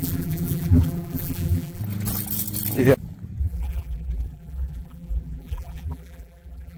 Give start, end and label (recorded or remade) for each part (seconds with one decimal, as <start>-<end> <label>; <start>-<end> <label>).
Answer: 0.0-1.8 remade; 1.8-3.4 recorded; 3.4-6.8 remade